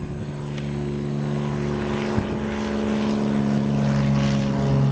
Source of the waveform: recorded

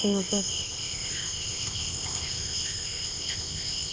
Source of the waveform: remade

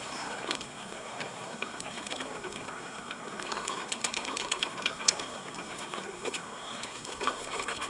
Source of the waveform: remade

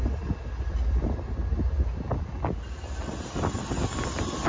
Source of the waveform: recorded